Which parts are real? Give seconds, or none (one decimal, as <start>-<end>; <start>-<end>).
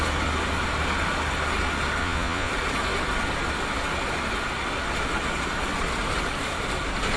0.0-2.0; 2.5-7.2